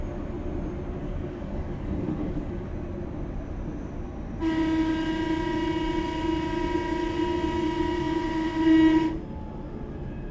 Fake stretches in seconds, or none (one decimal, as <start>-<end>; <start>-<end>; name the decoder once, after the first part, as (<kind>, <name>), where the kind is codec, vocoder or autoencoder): 1.0-2.7 (codec, DAC)